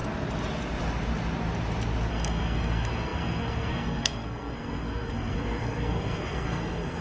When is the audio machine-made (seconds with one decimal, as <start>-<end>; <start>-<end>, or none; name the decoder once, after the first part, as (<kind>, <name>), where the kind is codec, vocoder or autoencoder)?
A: 2.1-7.0 (codec, SNAC)